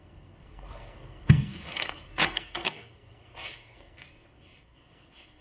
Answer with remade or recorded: remade